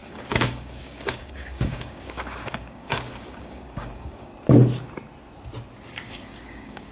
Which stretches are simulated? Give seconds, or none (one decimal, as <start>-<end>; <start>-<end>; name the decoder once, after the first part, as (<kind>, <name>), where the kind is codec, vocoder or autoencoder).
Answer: 0.0-4.3 (codec, DAC); 6.1-6.9